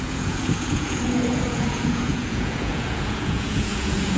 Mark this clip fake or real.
fake